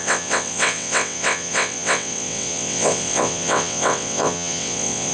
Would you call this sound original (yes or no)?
no